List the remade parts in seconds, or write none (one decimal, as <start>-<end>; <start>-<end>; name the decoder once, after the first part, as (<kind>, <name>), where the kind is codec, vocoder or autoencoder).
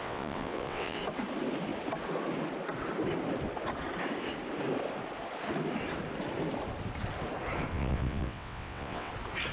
0.0-1.0 (vocoder, WaveNeXt); 7.7-9.1